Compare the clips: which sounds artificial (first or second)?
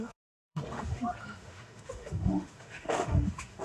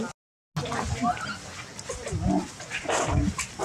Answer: first